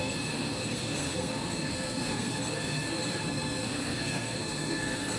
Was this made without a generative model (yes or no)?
no